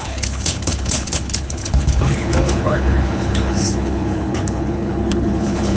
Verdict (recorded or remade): remade